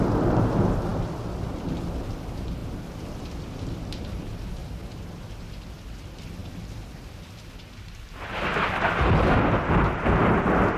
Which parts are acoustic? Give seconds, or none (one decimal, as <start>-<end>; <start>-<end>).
2.6-3.2; 6.4-10.8